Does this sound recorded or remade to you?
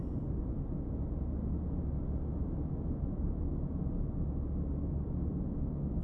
recorded